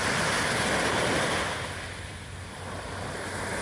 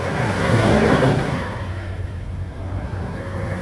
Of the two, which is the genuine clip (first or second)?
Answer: first